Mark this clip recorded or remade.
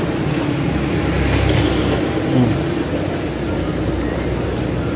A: recorded